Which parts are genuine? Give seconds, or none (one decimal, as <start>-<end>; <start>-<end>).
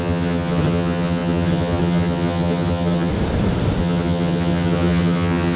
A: 3.1-3.8